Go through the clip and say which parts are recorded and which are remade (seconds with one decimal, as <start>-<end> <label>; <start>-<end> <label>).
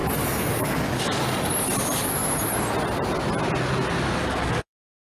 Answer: 0.0-0.5 recorded; 0.5-1.1 remade; 1.1-4.2 recorded; 4.2-5.1 remade